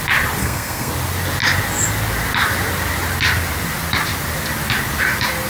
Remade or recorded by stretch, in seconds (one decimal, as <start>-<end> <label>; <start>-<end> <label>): 0.0-0.4 recorded; 0.4-0.9 remade; 0.9-5.5 recorded